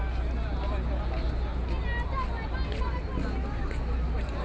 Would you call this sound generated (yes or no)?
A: no